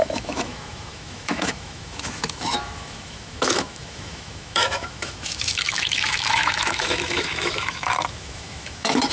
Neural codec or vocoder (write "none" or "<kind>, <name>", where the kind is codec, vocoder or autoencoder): autoencoder, DAC-VAE